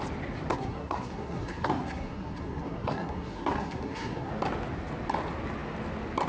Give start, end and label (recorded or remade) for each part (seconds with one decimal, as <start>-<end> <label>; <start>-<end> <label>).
0.0-0.5 recorded; 0.5-4.3 remade; 4.3-6.3 recorded